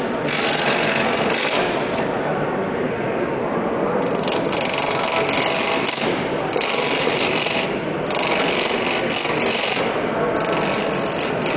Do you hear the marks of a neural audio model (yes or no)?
no